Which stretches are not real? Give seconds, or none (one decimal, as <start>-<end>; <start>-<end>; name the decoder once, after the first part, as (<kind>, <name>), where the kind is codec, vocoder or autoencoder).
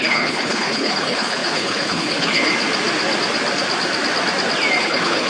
0.0-2.5 (codec, HILCodec); 4.8-5.3